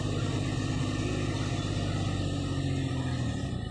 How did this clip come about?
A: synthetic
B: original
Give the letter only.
B